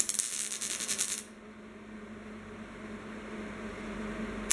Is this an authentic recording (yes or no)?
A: yes